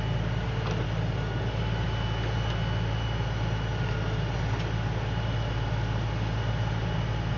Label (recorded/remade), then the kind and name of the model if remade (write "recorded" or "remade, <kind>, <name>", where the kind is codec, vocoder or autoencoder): recorded